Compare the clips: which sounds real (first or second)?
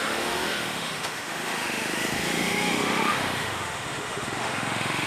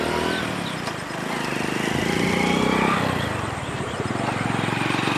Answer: second